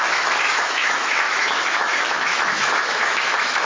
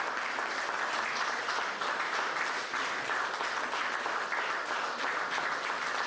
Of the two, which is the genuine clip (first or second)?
second